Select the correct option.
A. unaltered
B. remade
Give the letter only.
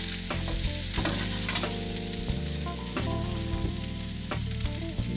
A